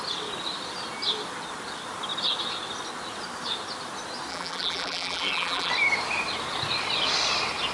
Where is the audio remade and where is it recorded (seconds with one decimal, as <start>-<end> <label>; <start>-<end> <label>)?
0.0-4.3 recorded; 4.3-5.7 remade; 5.7-7.7 recorded